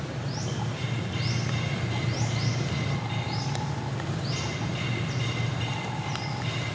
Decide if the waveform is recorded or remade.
recorded